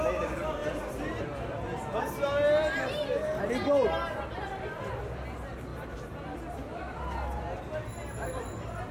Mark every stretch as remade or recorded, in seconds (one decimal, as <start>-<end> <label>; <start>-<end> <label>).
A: 0.0-8.9 recorded